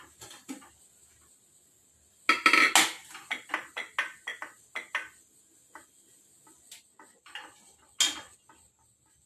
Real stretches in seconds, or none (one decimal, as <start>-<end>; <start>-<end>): 0.0-9.3